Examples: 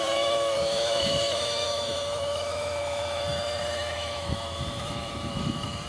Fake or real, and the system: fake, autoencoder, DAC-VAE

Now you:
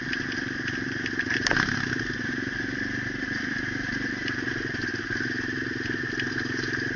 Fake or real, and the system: real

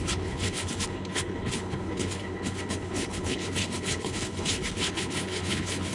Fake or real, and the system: fake, codec, HILCodec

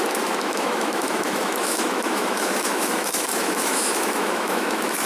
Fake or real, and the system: fake, autoencoder, DAC-VAE